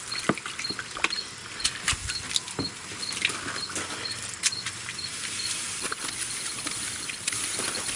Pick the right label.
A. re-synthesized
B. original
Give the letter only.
B